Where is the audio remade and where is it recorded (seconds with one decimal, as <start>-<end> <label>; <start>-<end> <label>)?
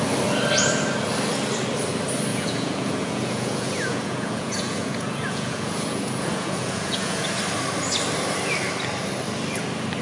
0.0-2.3 recorded; 2.3-7.4 remade; 7.4-10.0 recorded